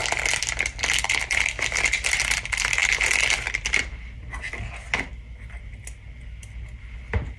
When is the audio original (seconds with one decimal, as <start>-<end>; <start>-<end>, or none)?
0.0-2.2; 2.8-7.4